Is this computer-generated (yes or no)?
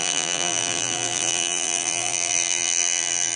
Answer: yes